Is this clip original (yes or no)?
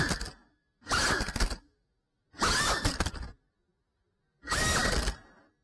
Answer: yes